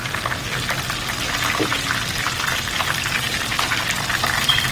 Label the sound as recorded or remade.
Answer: recorded